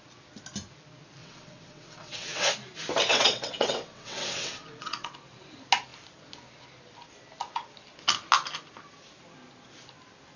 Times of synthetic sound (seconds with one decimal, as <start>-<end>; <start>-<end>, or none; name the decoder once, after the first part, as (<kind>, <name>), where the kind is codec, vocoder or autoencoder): 1.2-2.5 (vocoder, WaveNeXt); 3.1-5.1